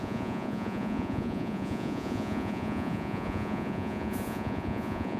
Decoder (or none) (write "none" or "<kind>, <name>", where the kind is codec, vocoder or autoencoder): vocoder, Vocos